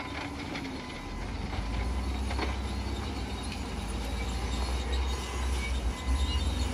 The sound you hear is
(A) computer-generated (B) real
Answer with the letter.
B